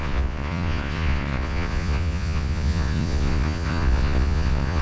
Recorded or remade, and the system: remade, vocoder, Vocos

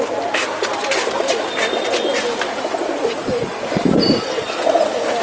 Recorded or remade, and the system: recorded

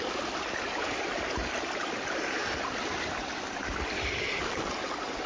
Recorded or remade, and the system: recorded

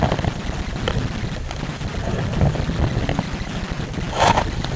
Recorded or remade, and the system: recorded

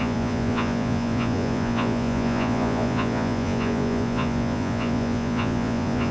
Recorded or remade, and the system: remade, vocoder, Vocos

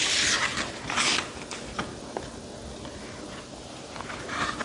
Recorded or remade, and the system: recorded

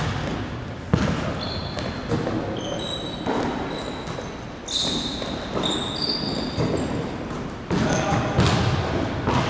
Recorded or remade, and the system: recorded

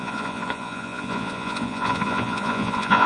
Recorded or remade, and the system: remade, vocoder, Vocos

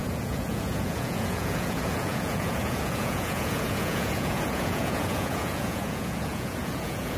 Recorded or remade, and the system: remade, vocoder, Vocos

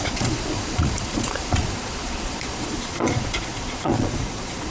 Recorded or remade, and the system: remade, vocoder, Vocos